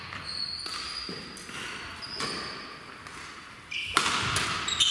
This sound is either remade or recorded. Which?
recorded